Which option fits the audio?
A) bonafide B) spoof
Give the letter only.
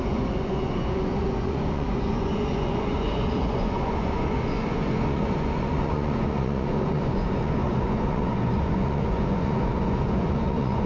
B